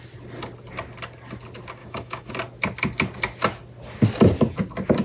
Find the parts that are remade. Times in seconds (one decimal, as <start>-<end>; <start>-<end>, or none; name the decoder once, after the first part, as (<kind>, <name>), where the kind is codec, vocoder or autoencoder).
1.8-2.3 (autoencoder, DAC-VAE)